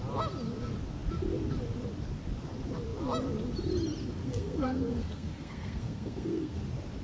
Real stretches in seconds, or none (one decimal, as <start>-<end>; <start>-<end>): 0.0-4.2; 6.6-7.0